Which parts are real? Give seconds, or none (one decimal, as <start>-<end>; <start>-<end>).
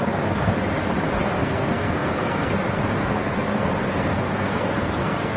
0.5-1.1